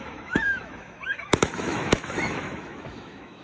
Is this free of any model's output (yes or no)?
no